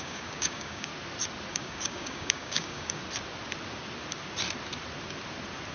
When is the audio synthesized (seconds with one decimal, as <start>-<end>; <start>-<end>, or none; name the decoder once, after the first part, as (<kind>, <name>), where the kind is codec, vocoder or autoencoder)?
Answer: 0.0-0.9 (codec, DAC); 1.5-3.0